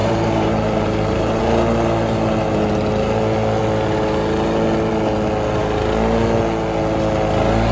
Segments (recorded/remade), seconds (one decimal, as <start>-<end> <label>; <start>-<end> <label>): 0.0-1.4 remade; 1.4-7.7 recorded